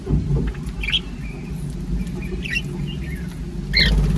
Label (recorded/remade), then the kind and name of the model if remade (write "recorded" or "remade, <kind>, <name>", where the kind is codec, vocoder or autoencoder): recorded